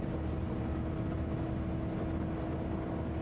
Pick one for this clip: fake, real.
real